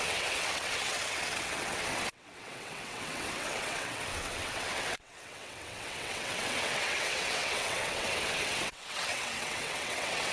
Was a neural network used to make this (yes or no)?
yes